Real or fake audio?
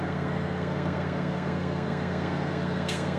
fake